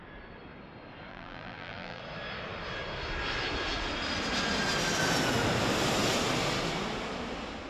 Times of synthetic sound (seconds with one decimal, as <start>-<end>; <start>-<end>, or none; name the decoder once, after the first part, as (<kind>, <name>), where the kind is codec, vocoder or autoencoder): 1.1-2.0 (vocoder, BigVGAN v2)